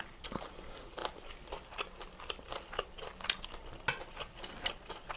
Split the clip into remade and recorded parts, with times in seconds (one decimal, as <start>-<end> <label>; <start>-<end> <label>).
0.0-5.2 recorded

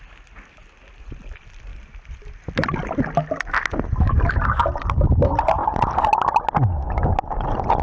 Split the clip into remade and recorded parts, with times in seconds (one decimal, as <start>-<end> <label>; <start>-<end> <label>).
0.0-7.8 recorded

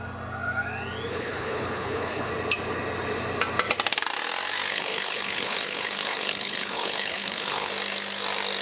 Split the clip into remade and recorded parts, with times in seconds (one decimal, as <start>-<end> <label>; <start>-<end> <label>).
0.0-1.1 recorded; 1.1-2.3 remade; 2.3-4.7 recorded; 4.7-7.7 remade; 7.7-8.6 recorded

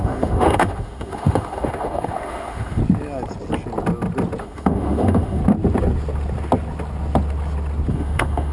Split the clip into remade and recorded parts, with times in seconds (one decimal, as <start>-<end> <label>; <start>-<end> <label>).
0.0-2.8 remade; 2.8-4.4 recorded; 4.4-5.4 remade; 5.4-7.9 recorded; 7.9-8.5 remade

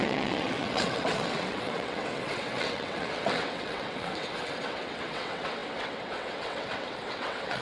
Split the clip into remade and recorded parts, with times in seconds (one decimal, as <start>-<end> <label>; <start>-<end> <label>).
0.0-7.6 remade

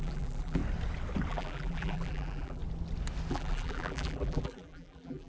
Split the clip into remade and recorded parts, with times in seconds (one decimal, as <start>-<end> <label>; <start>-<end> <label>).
0.0-0.6 remade; 0.6-1.3 recorded; 1.3-2.6 remade; 2.6-3.3 recorded; 3.3-5.3 remade